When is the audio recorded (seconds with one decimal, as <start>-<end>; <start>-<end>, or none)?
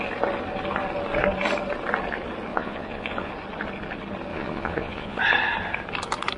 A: 0.0-2.5; 3.3-4.3; 5.2-6.4